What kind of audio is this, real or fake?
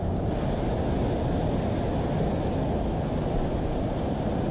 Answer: real